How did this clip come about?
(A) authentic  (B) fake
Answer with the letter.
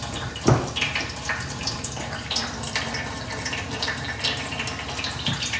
B